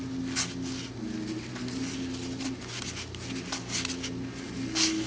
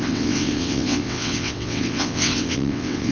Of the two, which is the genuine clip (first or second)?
first